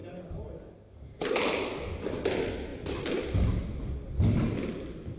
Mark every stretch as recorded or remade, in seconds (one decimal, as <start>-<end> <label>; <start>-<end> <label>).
0.0-5.2 recorded